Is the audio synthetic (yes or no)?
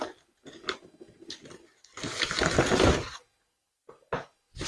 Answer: no